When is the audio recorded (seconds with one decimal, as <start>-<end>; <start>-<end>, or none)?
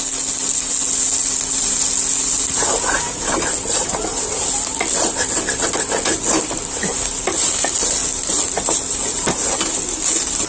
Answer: 0.0-10.5